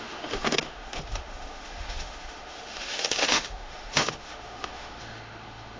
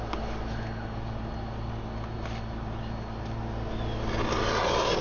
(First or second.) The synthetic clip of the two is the first